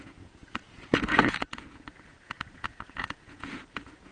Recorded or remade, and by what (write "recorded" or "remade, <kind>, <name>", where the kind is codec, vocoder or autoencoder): remade, vocoder, Vocos